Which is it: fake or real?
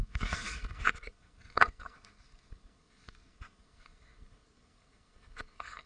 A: fake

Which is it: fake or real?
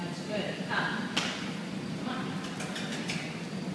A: real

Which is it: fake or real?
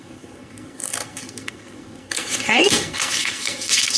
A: fake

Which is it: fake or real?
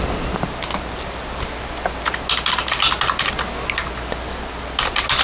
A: real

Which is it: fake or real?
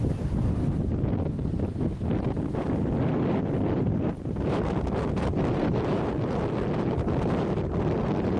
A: real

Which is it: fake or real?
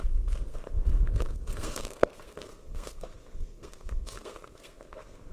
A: fake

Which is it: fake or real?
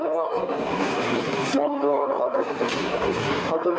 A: fake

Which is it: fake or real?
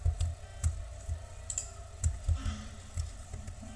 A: real